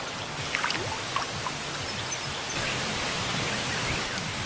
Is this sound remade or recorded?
recorded